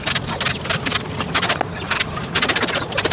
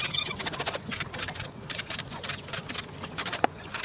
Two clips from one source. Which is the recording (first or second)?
first